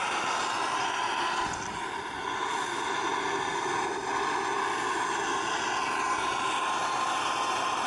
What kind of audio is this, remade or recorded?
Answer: recorded